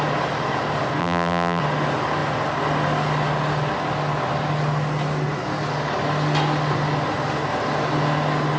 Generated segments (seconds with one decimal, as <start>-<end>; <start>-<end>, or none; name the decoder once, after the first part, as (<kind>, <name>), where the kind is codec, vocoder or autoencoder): 1.0-1.6 (vocoder, BigVGAN v2)

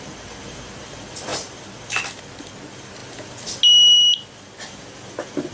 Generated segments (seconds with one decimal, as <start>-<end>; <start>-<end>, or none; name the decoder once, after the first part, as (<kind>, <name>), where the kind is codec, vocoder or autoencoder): none

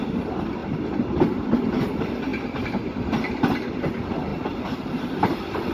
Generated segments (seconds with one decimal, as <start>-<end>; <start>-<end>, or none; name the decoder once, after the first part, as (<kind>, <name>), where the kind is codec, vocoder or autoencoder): 0.6-1.9 (vocoder, BigVGAN v2); 4.3-5.1